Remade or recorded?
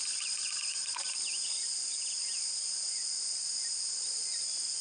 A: recorded